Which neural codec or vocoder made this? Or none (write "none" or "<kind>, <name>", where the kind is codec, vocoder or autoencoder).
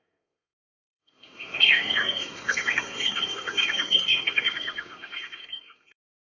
codec, SNAC